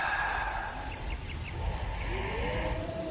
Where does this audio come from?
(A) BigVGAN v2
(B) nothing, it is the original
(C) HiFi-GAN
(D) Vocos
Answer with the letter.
B